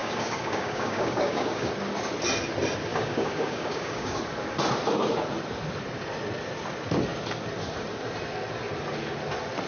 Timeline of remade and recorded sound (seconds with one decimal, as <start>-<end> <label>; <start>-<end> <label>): 0.0-1.7 remade; 1.7-2.9 recorded; 2.9-4.2 remade; 4.2-9.7 recorded